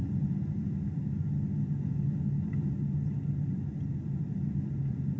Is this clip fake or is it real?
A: real